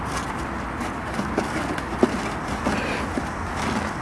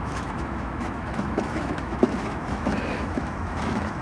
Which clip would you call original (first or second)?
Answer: first